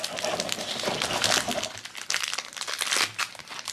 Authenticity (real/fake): real